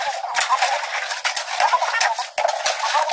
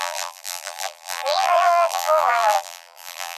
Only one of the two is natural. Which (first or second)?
first